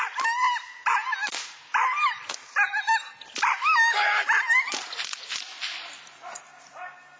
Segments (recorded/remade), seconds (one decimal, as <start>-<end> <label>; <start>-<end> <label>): 0.0-7.2 recorded